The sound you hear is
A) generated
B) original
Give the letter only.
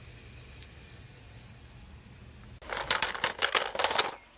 B